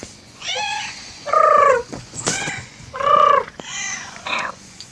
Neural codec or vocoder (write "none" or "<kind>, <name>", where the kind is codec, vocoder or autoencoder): vocoder, Vocos